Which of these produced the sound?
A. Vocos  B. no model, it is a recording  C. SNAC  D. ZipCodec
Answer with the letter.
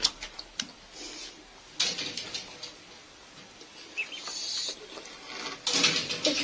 B